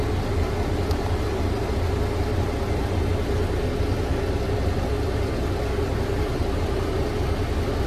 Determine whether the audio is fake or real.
real